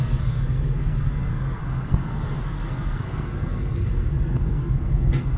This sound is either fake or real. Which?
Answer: fake